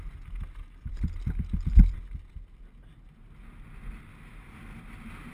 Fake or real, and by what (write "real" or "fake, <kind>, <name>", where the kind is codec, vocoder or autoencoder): real